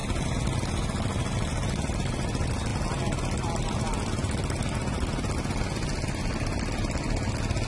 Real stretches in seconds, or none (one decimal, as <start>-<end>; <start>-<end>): 0.0-7.7